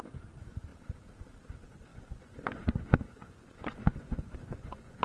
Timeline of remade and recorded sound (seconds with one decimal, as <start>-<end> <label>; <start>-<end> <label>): 0.0-1.9 recorded; 1.9-5.0 remade